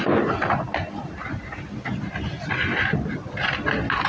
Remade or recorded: recorded